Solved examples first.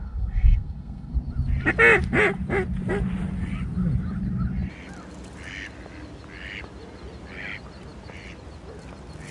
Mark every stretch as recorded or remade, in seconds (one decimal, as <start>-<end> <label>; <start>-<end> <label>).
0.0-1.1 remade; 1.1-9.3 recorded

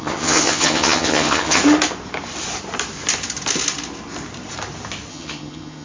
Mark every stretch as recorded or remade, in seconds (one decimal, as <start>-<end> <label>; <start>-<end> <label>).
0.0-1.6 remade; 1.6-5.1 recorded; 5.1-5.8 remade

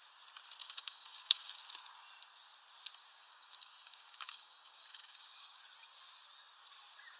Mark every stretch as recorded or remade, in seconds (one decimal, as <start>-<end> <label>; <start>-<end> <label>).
0.0-0.6 recorded; 0.6-1.5 remade; 1.5-3.1 recorded; 3.1-5.6 remade; 5.6-7.2 recorded